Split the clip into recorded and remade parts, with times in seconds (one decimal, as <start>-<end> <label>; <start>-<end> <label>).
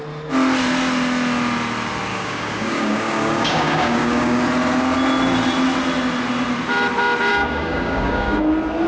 0.0-2.1 recorded; 2.1-4.4 remade; 4.4-7.3 recorded; 7.3-8.4 remade; 8.4-8.9 recorded